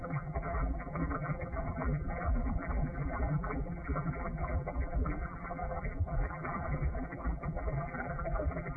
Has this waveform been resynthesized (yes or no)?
yes